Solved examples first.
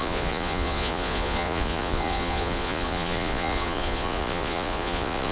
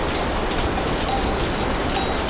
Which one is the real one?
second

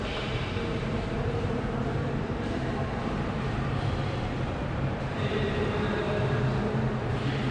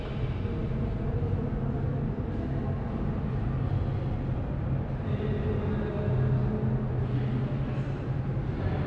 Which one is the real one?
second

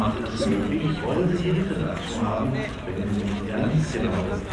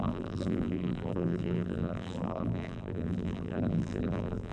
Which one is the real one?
first